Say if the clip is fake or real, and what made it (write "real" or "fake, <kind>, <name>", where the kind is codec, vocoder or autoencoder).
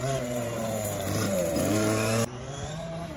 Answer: fake, vocoder, BigVGAN v2